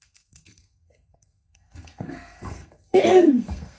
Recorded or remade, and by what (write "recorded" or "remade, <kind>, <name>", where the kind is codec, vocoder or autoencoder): remade, codec, SNAC